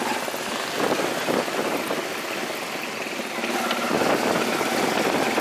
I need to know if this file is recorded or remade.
recorded